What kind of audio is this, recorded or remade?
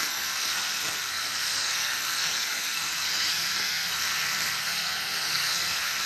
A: remade